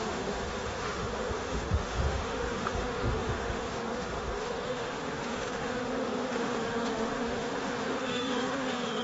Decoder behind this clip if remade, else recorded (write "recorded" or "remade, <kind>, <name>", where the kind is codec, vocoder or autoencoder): remade, autoencoder, DAC-VAE